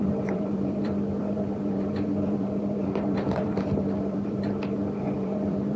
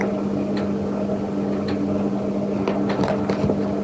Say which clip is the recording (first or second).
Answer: second